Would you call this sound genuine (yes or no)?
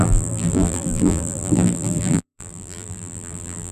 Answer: no